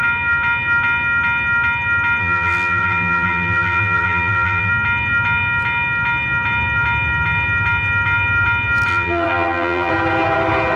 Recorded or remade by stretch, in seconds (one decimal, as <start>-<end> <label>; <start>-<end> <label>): 0.0-2.2 recorded; 2.2-4.7 remade; 4.7-8.9 recorded; 8.9-9.9 remade; 9.9-10.8 recorded